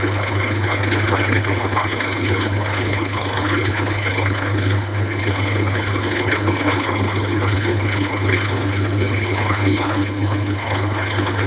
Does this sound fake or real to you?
fake